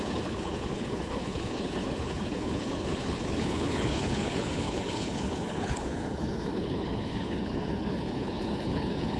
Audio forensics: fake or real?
fake